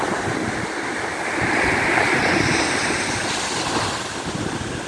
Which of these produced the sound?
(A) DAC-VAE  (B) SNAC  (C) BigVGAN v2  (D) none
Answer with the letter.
D